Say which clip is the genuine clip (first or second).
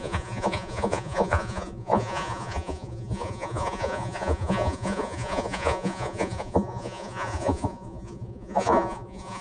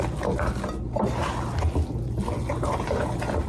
second